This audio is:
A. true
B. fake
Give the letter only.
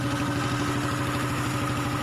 A